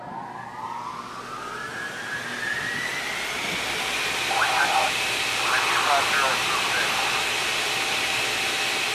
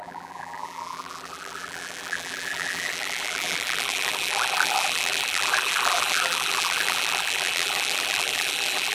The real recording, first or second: first